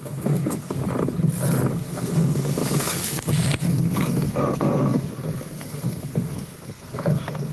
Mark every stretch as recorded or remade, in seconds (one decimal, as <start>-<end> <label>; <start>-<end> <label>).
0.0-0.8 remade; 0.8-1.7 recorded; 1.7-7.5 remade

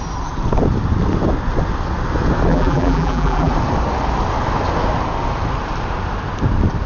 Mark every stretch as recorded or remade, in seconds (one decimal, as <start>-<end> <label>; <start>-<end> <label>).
0.0-2.5 recorded; 2.5-3.5 remade; 3.5-6.9 recorded

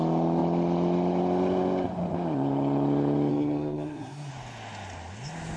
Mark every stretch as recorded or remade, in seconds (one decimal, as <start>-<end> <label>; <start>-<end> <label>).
0.0-3.3 recorded; 3.3-4.3 remade; 4.3-5.6 recorded

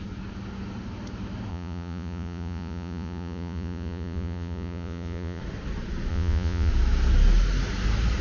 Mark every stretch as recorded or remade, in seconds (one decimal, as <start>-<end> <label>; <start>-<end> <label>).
0.0-1.5 recorded; 1.5-5.4 remade; 5.4-6.1 recorded; 6.1-6.7 remade; 6.7-8.2 recorded

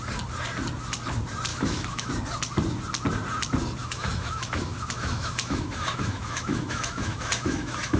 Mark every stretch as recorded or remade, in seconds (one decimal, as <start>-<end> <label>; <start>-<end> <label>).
0.0-1.5 recorded; 1.5-2.1 remade; 2.1-3.8 recorded; 3.8-8.0 remade

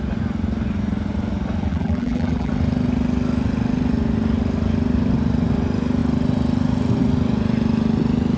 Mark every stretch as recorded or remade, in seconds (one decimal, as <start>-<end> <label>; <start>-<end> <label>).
0.0-1.7 recorded; 1.7-2.5 remade; 2.5-8.4 recorded

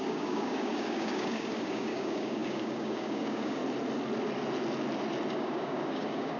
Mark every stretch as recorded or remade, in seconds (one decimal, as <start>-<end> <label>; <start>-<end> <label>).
0.0-3.6 remade; 3.6-5.3 recorded; 5.3-6.4 remade

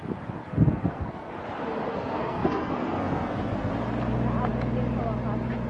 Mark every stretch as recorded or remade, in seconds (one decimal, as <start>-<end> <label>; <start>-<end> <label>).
0.0-0.4 recorded; 0.4-1.3 remade; 1.3-1.9 recorded; 1.9-3.7 remade; 3.7-5.7 recorded